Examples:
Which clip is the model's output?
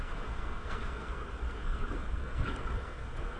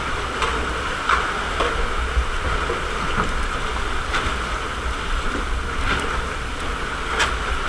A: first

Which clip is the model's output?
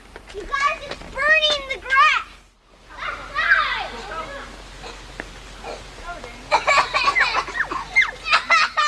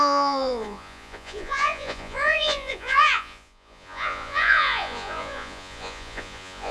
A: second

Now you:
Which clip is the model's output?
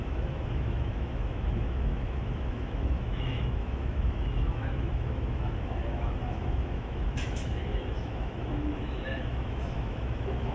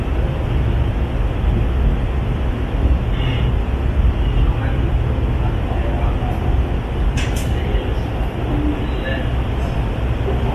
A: first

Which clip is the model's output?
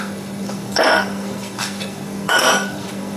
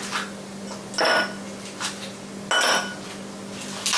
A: first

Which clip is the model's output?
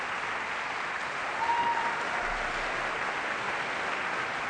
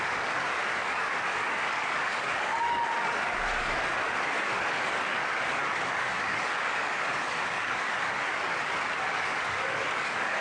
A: second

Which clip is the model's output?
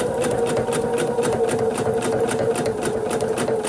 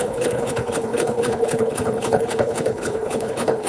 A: second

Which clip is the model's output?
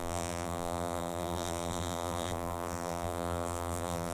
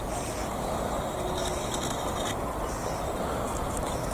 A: first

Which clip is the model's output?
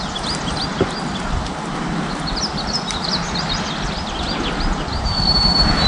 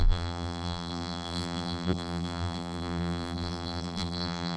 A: second